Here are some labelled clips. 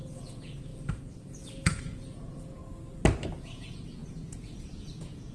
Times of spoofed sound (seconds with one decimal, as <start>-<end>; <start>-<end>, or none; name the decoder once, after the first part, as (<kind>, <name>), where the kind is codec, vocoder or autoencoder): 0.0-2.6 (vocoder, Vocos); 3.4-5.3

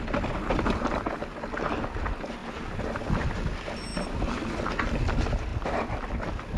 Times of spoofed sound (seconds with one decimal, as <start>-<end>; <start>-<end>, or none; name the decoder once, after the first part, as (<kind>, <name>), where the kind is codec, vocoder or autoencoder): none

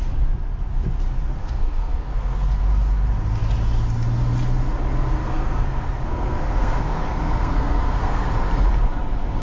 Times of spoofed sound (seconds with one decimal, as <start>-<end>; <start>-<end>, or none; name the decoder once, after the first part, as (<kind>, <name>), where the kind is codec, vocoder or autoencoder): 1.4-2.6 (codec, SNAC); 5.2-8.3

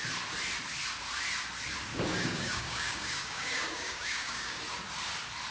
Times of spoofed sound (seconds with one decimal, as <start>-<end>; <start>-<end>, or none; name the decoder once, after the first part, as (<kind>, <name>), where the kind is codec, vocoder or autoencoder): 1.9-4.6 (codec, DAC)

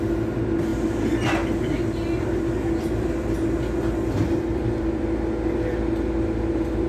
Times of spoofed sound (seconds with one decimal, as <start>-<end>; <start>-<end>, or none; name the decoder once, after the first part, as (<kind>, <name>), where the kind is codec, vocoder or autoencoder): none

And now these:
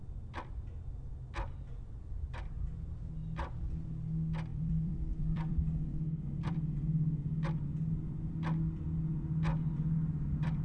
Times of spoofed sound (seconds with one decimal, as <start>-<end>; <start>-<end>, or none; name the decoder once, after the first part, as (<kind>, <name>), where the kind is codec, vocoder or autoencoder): 3.2-4.0 (vocoder, BigVGAN v2); 4.5-5.6; 6.4-7.2

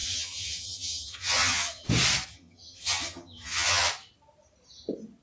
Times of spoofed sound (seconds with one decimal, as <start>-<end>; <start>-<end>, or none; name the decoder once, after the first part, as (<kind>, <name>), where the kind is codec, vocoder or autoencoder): 0.0-1.9 (vocoder, HiFi-GAN); 2.3-3.9